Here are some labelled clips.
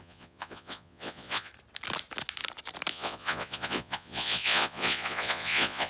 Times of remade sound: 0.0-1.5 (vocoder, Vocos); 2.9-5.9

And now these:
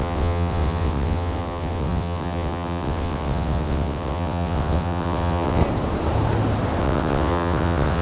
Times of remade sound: 0.0-5.6 (vocoder, WaveNeXt); 6.8-8.0

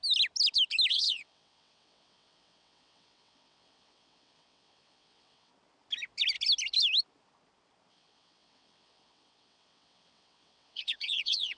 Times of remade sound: 0.9-5.5 (vocoder, WaveNeXt); 7.9-11.6

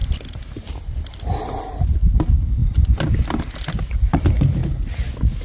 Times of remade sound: none